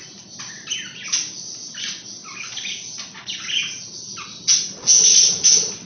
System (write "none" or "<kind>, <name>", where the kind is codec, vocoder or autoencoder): none